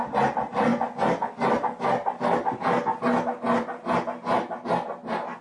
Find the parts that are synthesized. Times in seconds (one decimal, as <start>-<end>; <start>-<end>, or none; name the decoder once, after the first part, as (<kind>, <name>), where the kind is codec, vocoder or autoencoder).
none